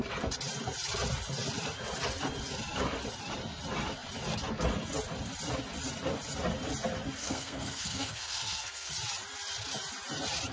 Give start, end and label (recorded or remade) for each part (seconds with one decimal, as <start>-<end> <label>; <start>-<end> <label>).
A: 0.0-7.2 recorded; 7.2-8.9 remade; 8.9-10.5 recorded